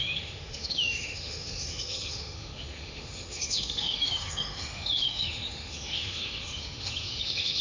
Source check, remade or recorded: remade